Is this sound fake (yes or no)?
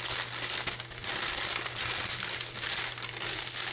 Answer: no